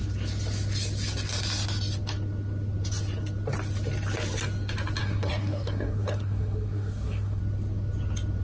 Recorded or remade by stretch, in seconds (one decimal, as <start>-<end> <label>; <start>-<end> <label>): 0.0-5.0 recorded; 5.0-7.4 remade; 7.4-8.4 recorded